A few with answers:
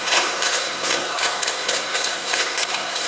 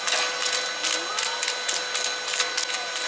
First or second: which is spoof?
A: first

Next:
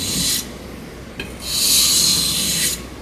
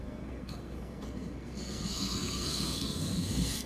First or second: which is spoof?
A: second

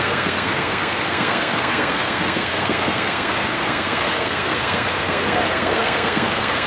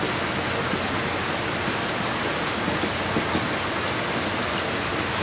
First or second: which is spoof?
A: first